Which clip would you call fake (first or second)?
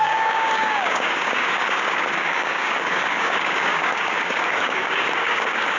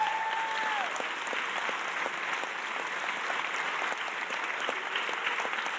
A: first